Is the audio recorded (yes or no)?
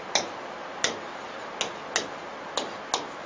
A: yes